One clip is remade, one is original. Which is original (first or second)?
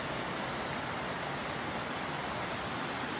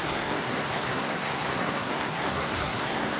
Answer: first